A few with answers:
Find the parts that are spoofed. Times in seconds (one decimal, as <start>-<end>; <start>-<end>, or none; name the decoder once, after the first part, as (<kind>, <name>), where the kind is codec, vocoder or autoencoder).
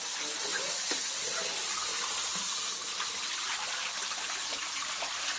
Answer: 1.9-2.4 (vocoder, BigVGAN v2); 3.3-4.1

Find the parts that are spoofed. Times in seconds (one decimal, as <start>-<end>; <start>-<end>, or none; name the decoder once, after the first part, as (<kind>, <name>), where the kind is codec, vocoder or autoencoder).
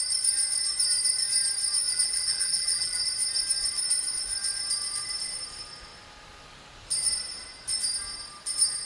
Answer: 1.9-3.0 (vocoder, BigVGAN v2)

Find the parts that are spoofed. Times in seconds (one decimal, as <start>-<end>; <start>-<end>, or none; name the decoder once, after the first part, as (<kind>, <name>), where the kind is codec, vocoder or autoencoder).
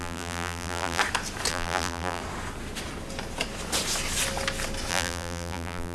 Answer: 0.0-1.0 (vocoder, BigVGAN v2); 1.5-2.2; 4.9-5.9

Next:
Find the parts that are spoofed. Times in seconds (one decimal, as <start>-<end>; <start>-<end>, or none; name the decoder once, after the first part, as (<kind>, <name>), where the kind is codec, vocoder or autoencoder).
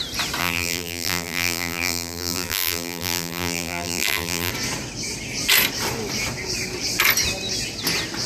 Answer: 0.4-4.5 (vocoder, BigVGAN v2)